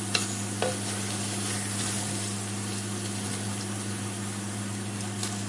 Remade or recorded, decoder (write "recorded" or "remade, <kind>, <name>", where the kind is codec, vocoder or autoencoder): recorded